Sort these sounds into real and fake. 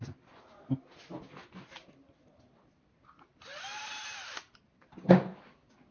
real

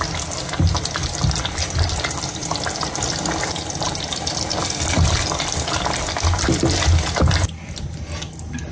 real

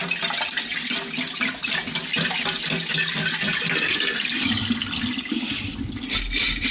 real